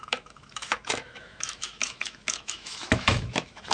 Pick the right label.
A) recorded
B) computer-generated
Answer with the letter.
B